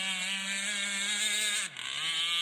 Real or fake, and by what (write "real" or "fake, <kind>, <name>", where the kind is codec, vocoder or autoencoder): real